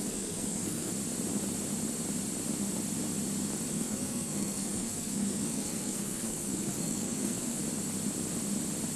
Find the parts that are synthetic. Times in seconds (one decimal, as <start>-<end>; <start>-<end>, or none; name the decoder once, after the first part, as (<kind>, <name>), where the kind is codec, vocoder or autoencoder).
0.0-0.9 (codec, SNAC); 3.7-7.6